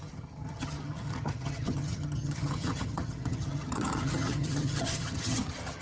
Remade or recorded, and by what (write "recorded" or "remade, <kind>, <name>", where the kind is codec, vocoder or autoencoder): remade, vocoder, HiFi-GAN